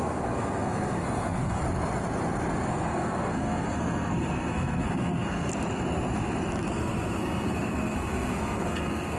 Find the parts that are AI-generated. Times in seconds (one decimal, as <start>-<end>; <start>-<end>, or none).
0.0-1.6; 2.7-5.5; 6.7-9.2